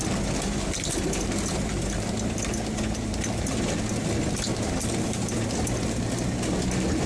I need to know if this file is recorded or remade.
recorded